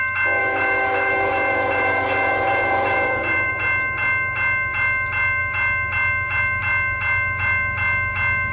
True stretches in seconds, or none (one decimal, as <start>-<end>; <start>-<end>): 0.0-0.4; 3.5-8.5